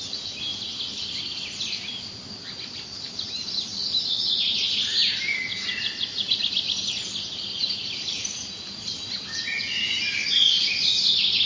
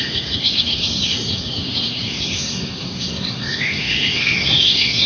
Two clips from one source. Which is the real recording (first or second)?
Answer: first